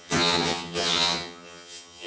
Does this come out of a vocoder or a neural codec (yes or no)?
yes